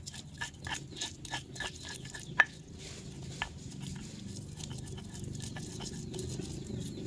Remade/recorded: recorded